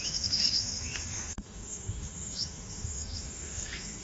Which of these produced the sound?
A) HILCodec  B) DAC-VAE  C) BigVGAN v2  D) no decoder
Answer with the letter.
B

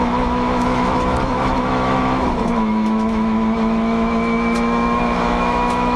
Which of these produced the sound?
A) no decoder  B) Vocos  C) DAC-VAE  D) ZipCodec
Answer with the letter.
C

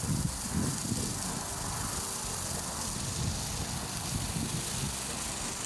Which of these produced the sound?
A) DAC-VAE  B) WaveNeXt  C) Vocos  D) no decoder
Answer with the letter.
D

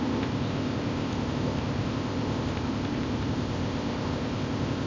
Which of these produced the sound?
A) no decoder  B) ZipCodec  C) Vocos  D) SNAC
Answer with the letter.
B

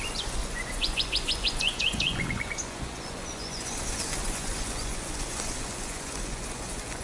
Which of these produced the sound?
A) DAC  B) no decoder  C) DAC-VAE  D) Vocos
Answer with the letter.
D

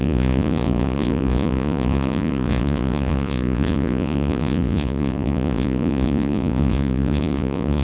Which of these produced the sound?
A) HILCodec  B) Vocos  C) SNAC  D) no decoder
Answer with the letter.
B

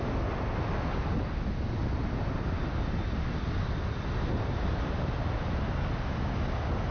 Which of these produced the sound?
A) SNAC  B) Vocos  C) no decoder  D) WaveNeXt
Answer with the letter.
C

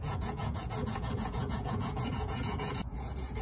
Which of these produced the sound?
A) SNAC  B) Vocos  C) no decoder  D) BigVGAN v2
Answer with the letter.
B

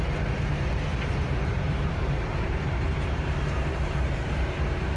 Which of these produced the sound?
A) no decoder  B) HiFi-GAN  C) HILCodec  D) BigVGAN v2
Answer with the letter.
D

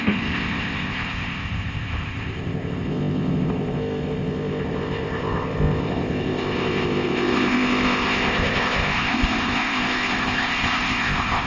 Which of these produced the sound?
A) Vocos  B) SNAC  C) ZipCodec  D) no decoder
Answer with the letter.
C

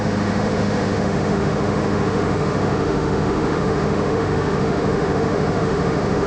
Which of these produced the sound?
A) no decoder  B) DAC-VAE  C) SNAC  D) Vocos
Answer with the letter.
B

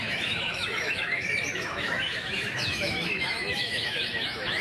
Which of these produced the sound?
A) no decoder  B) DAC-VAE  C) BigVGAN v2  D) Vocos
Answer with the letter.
B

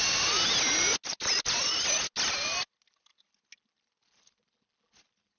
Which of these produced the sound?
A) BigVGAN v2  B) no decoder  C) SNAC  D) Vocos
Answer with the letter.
B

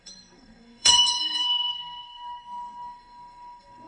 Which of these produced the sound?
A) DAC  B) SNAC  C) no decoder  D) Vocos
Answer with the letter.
B